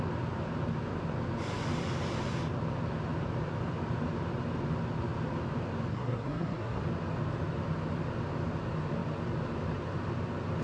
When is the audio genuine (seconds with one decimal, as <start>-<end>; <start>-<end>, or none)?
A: 0.0-5.9; 6.8-10.6